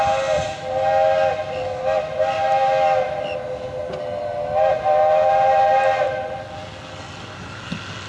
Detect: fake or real real